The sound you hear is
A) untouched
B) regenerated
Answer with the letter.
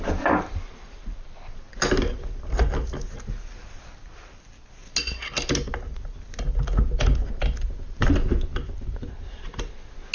A